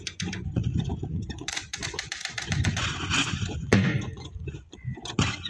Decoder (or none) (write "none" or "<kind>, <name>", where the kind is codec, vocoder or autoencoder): vocoder, Vocos